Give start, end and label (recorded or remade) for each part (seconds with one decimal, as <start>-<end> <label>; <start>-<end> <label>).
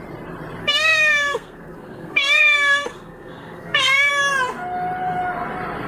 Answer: 0.0-0.6 recorded; 0.6-4.1 remade; 4.1-5.9 recorded